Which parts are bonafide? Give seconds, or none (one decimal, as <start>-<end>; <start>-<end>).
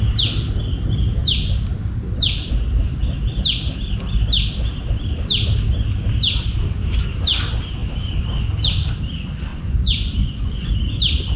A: 0.0-9.5; 10.7-11.4